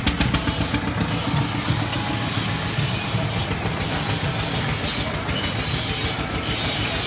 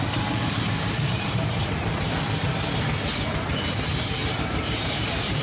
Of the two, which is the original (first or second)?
first